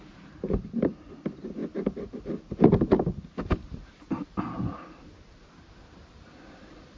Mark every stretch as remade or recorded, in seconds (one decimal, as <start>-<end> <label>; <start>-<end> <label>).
0.0-7.0 recorded